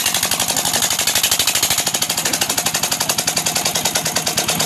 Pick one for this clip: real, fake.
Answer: real